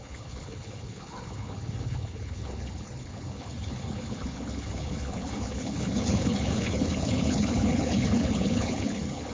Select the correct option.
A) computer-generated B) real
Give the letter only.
A